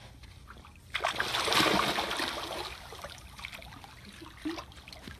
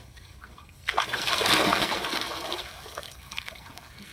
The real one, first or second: first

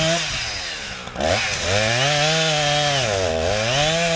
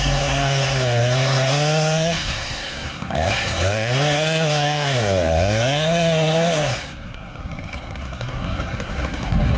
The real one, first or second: first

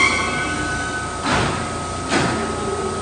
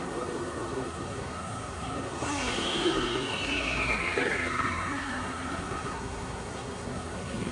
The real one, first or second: first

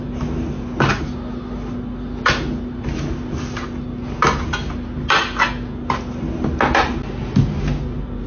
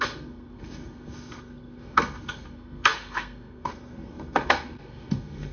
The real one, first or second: first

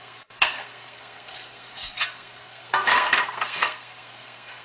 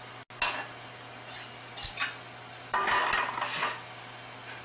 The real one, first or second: second